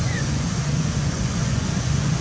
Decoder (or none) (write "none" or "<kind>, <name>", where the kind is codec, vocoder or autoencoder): vocoder, Vocos